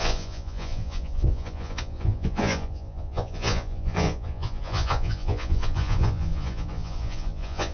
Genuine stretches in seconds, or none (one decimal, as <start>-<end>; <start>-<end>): none